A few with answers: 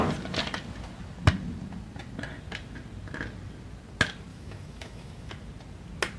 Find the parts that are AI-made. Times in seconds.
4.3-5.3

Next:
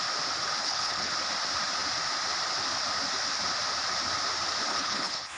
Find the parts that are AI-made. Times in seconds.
0.6-1.1; 4.7-5.4

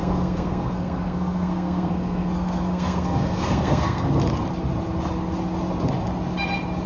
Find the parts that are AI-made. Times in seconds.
0.0-4.1

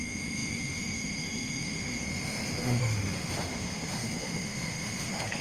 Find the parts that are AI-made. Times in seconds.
0.0-5.4

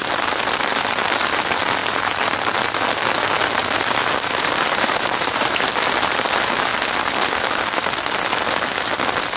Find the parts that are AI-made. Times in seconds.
1.8-2.6; 4.0-5.6

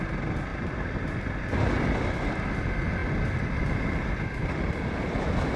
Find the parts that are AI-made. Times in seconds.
none

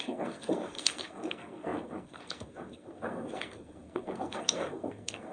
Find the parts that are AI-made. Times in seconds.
0.0-5.3